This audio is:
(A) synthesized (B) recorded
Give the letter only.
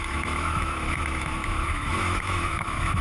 A